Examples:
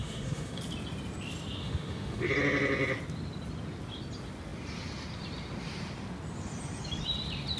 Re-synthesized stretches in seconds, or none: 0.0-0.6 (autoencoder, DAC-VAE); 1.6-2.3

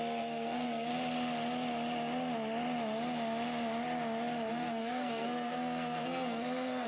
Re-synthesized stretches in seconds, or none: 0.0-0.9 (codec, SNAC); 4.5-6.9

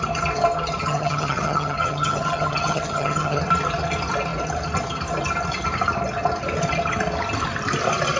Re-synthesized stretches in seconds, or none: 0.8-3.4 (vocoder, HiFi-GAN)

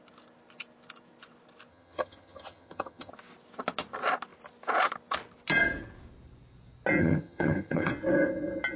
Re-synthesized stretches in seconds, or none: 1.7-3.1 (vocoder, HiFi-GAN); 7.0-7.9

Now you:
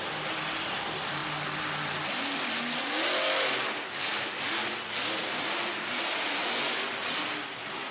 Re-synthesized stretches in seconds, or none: none

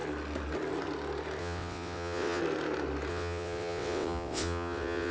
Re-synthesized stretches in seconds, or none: 1.4-2.4 (vocoder, WaveNeXt); 3.1-5.1

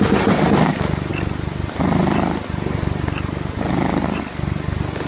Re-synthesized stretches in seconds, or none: none

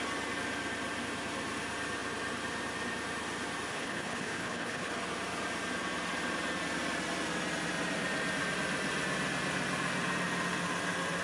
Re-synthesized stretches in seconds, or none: 3.7-4.9 (codec, HILCodec)